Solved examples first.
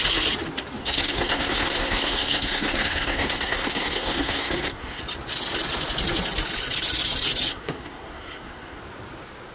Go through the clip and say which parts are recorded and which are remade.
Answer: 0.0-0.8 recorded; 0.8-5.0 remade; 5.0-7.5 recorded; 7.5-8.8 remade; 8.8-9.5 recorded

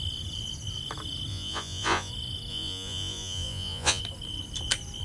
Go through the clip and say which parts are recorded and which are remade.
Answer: 0.0-1.3 recorded; 1.3-2.1 remade; 2.1-2.5 recorded; 2.5-4.0 remade; 4.0-5.0 recorded